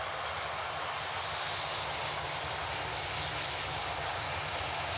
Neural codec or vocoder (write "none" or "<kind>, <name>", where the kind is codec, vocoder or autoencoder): none